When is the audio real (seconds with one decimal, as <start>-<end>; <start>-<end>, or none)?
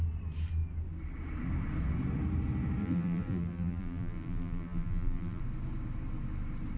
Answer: 0.0-2.8; 5.4-6.8